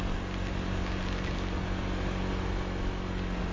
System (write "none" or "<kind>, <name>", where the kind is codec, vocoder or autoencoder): none